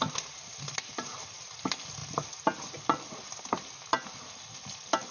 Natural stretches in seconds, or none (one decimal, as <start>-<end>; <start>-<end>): 0.0-5.1